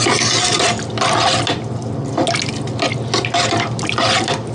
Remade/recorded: recorded